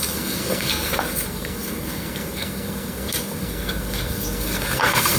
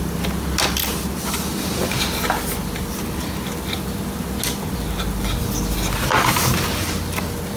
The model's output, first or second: first